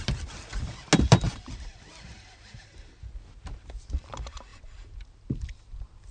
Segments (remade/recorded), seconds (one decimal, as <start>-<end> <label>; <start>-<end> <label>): 0.0-6.1 recorded